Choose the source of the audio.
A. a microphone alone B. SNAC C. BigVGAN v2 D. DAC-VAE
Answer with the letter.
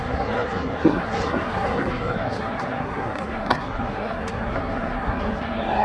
B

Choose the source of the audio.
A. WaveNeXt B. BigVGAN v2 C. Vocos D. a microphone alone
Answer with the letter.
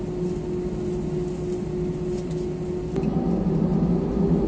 D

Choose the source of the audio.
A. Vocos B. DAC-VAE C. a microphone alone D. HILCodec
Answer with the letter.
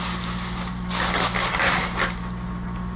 C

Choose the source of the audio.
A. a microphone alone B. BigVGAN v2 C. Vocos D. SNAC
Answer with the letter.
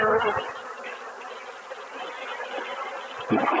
A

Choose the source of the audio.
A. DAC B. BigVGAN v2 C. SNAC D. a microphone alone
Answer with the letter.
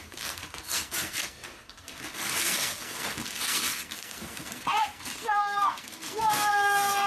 C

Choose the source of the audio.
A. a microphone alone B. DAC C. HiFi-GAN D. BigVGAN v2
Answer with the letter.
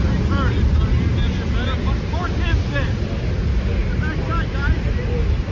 A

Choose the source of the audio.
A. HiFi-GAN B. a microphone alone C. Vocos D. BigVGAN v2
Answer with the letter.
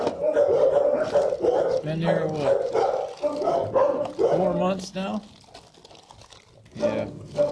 B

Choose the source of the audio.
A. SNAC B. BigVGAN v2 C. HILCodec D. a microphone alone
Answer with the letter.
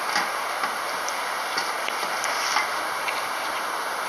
D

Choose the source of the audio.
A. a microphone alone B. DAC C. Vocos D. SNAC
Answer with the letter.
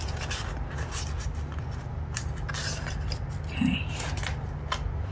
A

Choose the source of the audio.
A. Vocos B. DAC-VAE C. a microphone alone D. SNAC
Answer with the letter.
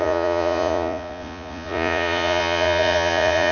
A